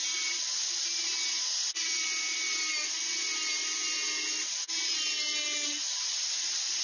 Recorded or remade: recorded